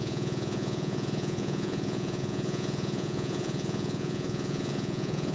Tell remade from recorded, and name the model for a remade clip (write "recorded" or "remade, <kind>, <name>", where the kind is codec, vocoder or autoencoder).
remade, vocoder, Vocos